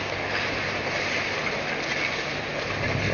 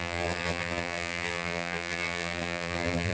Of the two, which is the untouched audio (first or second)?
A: first